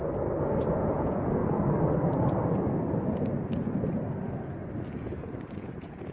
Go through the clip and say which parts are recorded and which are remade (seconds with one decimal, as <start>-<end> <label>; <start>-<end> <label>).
0.0-0.7 recorded; 0.7-1.4 remade; 1.4-5.0 recorded; 5.0-6.1 remade